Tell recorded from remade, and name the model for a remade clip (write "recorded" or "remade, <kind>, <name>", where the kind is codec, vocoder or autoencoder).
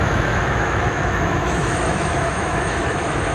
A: remade, autoencoder, DAC-VAE